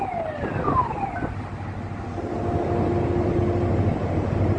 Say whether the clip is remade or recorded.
recorded